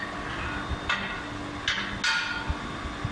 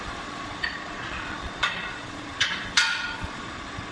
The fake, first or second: second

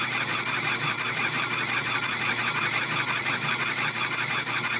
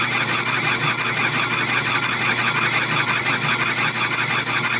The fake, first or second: first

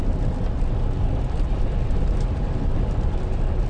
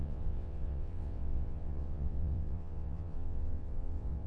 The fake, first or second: second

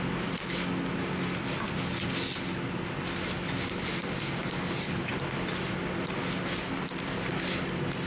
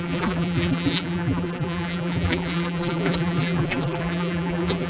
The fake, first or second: second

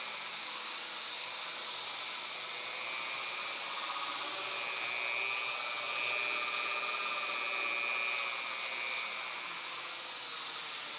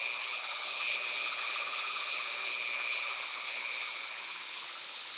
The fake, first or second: second